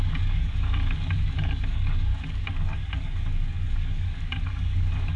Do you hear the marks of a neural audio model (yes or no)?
yes